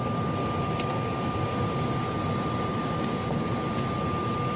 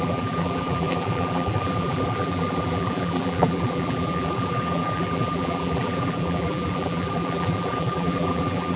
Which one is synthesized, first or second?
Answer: second